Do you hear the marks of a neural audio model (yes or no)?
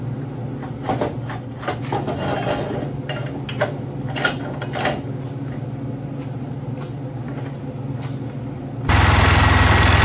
no